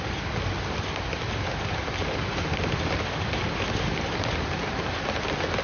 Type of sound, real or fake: real